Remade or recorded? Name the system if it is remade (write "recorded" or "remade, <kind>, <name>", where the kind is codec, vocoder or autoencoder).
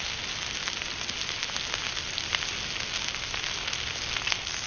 recorded